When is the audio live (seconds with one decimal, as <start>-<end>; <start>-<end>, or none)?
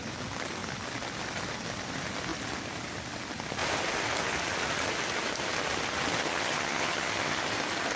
0.0-6.2; 7.4-8.0